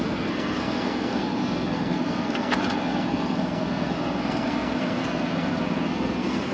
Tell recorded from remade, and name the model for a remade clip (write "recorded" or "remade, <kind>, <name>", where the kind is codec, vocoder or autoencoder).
remade, codec, SNAC